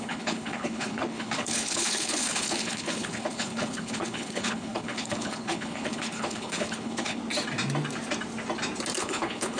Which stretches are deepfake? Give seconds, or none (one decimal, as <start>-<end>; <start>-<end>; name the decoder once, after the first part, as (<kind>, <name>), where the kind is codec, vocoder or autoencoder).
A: 0.0-7.2 (codec, HILCodec); 9.0-9.6